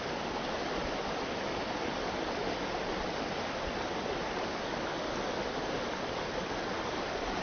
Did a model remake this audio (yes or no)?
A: no